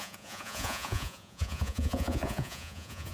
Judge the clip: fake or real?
fake